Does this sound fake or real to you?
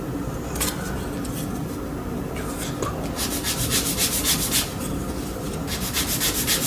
real